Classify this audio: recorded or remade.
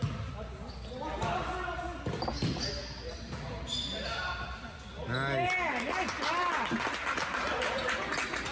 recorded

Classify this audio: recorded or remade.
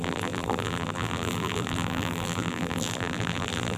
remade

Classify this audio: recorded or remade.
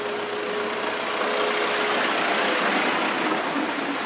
recorded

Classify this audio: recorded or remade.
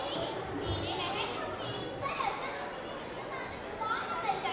recorded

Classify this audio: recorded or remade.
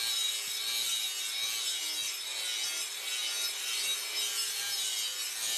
recorded